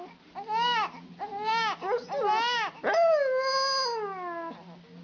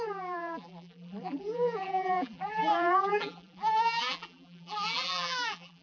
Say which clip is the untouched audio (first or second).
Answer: first